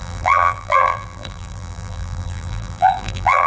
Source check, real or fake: fake